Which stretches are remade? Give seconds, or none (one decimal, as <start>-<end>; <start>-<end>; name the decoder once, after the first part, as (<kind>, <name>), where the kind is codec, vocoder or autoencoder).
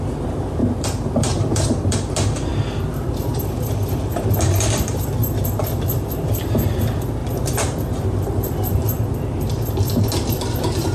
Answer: 0.0-10.9 (vocoder, BigVGAN v2)